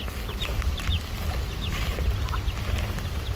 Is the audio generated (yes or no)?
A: no